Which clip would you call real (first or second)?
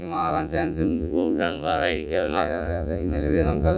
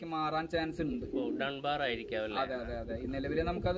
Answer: second